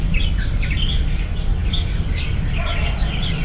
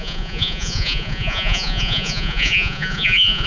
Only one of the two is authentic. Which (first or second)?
first